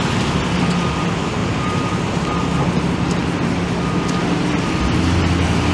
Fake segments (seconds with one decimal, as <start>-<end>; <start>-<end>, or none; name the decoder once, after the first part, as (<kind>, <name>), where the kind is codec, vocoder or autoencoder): 1.4-2.1 (vocoder, BigVGAN v2)